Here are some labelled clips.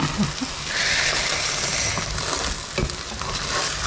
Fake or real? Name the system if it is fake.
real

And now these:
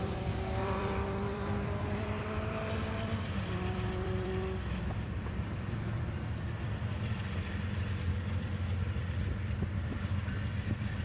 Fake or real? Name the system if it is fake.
fake, vocoder, BigVGAN v2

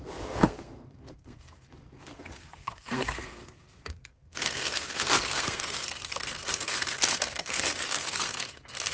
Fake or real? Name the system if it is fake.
fake, codec, SNAC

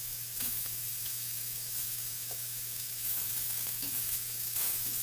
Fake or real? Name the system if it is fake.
fake, autoencoder, DAC-VAE